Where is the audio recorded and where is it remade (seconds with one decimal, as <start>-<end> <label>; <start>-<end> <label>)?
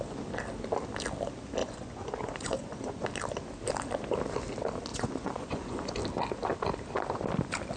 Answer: 0.0-1.6 recorded; 1.6-3.0 remade; 3.0-4.9 recorded; 4.9-5.9 remade; 5.9-7.8 recorded